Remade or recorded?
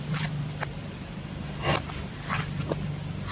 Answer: remade